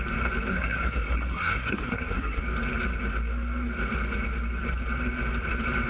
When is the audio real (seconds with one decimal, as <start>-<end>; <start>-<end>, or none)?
0.0-0.5; 2.4-5.9